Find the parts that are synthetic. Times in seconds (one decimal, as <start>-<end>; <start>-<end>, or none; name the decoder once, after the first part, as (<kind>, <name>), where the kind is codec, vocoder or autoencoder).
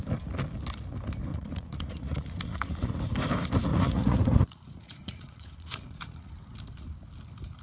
1.3-3.0 (vocoder, Vocos); 3.7-6.3